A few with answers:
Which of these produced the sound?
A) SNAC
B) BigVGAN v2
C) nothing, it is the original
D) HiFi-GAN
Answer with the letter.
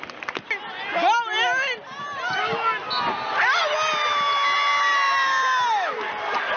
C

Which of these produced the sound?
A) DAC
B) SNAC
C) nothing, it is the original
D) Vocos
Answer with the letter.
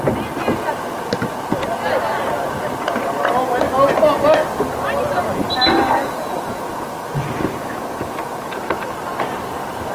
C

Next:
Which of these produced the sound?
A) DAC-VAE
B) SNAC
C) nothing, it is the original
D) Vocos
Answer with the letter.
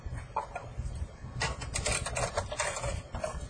C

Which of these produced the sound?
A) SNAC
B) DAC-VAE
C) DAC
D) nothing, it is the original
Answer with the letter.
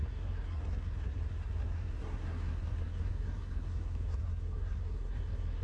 A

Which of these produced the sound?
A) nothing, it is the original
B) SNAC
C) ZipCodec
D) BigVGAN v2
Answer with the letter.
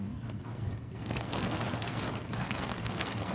B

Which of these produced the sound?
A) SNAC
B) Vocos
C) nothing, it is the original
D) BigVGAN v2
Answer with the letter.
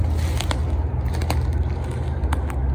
C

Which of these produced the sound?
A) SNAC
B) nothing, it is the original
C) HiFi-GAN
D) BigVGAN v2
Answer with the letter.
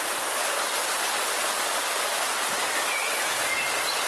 B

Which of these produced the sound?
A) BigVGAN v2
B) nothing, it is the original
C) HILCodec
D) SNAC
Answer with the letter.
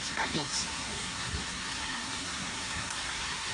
D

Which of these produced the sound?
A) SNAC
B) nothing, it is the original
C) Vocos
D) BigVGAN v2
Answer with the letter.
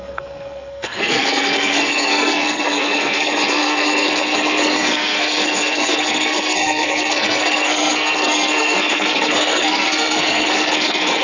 A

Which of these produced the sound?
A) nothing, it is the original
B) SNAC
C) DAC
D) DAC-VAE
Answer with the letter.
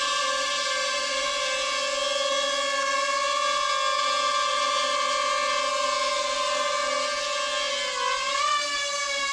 A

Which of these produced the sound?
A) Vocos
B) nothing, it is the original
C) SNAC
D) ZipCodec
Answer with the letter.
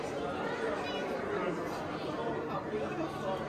B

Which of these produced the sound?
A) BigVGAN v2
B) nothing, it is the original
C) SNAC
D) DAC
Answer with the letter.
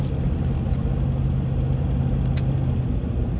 B